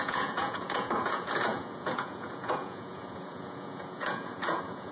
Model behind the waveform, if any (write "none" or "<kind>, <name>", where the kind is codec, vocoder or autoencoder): vocoder, Vocos